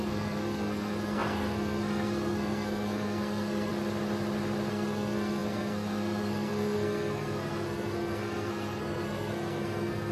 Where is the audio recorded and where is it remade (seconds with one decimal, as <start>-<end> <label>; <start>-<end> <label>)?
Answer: 0.0-3.7 remade; 3.7-4.7 recorded; 4.7-10.1 remade